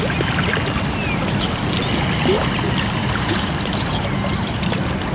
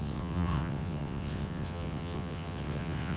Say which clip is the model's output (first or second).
second